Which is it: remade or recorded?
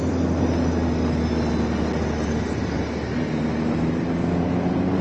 recorded